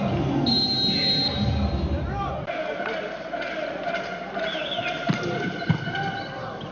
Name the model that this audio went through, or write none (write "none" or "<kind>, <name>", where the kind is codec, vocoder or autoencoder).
none